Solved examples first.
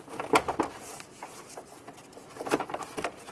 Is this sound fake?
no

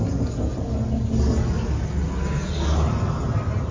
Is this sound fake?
no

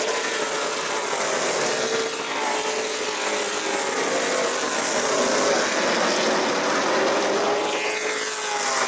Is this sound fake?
no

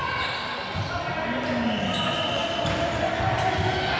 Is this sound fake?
no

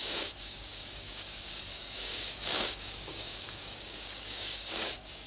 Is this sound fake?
yes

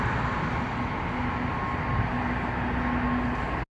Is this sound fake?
no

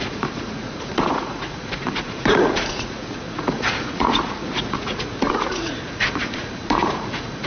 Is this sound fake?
yes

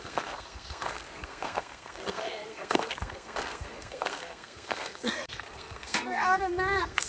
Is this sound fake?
yes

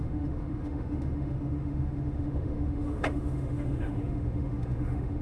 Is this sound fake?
yes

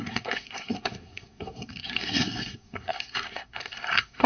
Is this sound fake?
yes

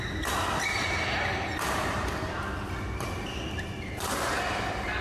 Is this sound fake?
no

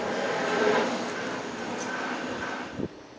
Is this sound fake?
no